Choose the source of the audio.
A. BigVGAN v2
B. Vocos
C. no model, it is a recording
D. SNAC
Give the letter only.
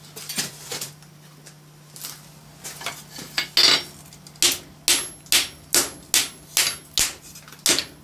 C